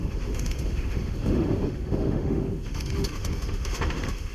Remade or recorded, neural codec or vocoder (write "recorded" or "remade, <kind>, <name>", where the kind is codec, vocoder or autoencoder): remade, autoencoder, DAC-VAE